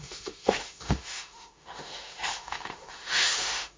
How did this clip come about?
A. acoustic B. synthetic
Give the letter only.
B